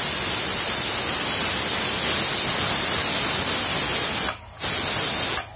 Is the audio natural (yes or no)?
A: yes